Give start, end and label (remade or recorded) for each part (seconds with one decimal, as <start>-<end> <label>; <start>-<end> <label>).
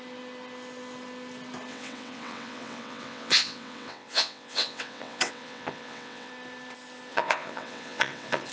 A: 0.0-1.7 recorded; 1.7-6.3 remade; 6.3-7.1 recorded; 7.1-8.5 remade